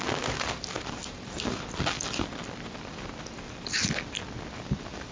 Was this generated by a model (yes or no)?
yes